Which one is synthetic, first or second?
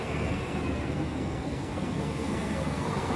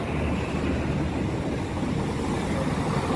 first